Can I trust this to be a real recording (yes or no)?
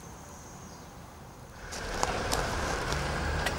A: no